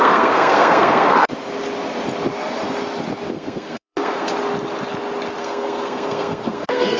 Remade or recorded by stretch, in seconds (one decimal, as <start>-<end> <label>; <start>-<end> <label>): 0.0-1.3 remade; 1.3-3.3 recorded; 3.3-4.3 remade; 4.3-5.4 recorded; 5.4-7.0 remade